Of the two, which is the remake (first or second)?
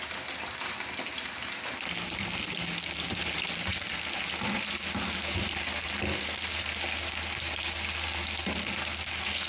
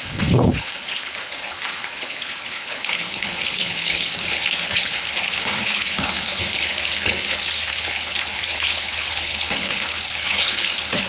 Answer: second